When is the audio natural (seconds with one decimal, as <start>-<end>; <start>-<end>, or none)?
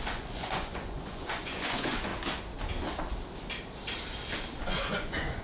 2.1-4.6